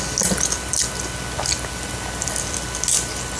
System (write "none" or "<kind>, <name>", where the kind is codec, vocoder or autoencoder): none